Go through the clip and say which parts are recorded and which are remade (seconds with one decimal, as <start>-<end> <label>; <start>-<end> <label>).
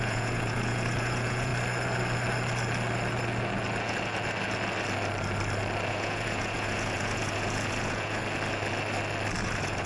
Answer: 0.0-1.5 remade; 1.5-5.9 recorded; 5.9-8.2 remade; 8.2-9.4 recorded; 9.4-9.9 remade